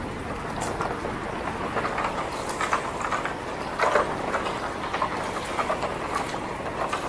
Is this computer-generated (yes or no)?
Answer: no